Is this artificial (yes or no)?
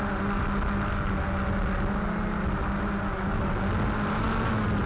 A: no